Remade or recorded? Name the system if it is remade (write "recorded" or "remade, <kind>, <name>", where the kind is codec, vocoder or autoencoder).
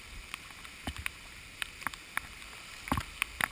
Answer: recorded